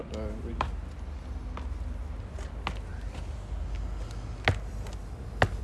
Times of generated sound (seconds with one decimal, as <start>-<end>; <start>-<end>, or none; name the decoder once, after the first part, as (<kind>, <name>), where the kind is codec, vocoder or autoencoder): none